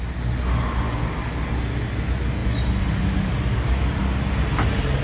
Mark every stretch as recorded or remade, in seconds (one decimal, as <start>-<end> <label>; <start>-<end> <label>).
0.0-5.0 recorded